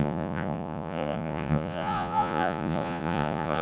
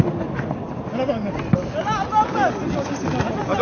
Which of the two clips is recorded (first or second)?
second